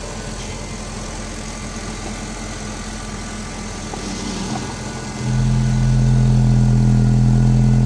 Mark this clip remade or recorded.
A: recorded